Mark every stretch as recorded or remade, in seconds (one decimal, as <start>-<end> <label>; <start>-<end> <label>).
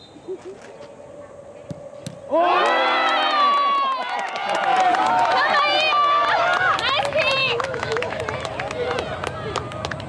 0.0-7.4 recorded; 7.4-8.2 remade; 8.2-10.1 recorded